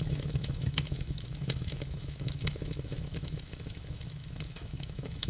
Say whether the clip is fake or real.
fake